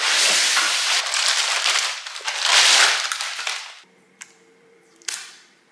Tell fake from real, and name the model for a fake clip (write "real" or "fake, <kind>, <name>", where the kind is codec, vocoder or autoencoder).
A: fake, vocoder, BigVGAN v2